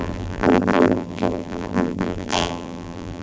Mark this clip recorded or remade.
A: remade